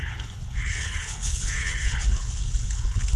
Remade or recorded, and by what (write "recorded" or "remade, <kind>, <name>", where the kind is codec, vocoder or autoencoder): remade, codec, HILCodec